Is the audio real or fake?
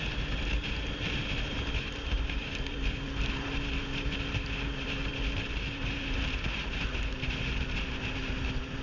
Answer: fake